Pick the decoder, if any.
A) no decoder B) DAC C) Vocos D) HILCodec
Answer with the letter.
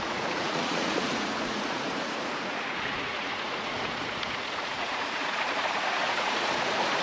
C